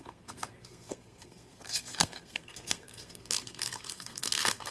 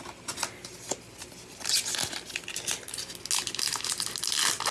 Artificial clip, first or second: first